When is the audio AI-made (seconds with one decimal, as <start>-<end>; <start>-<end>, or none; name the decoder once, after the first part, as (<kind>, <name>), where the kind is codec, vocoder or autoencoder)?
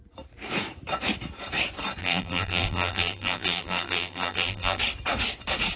2.0-4.8 (vocoder, BigVGAN v2)